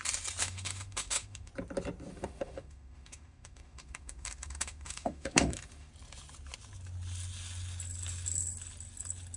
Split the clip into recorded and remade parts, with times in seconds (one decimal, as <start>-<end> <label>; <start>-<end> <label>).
0.0-0.4 recorded; 0.4-1.5 remade; 1.5-2.1 recorded; 2.1-5.9 remade; 5.9-9.4 recorded

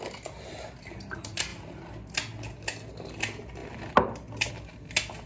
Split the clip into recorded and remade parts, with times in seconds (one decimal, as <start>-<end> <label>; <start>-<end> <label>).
0.0-5.3 recorded